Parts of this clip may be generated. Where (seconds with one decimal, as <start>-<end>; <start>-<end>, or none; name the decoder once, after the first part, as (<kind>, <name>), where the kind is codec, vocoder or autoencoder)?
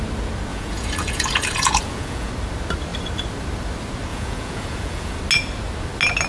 0.5-2.3 (vocoder, Vocos); 4.1-5.2